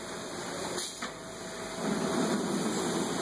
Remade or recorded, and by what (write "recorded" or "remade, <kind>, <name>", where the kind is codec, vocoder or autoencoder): recorded